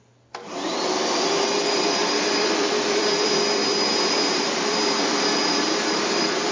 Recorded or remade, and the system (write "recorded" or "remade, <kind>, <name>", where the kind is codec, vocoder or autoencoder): remade, vocoder, BigVGAN v2